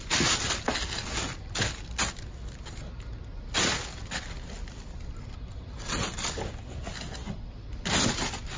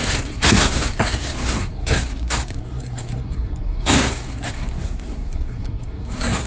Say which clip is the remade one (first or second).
second